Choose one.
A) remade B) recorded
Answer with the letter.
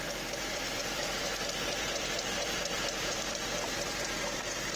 A